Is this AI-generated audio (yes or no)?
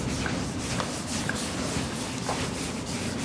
no